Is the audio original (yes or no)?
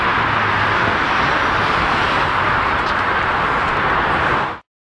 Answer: yes